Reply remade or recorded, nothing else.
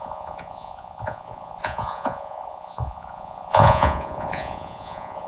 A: remade